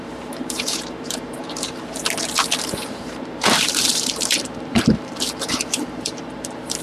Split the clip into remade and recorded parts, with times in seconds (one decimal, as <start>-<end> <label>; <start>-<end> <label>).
0.0-2.0 remade; 2.0-2.6 recorded; 2.6-6.8 remade